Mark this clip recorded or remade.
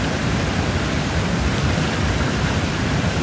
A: remade